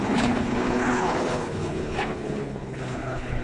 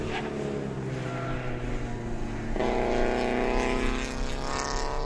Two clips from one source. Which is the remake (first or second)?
first